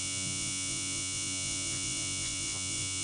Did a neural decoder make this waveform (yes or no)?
yes